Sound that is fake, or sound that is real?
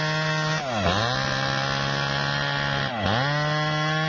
real